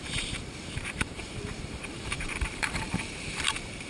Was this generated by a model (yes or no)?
yes